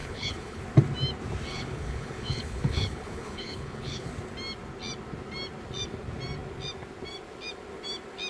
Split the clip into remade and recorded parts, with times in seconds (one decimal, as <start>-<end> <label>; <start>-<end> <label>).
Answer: 0.0-0.6 remade; 0.6-1.5 recorded; 1.5-4.1 remade; 4.1-8.3 recorded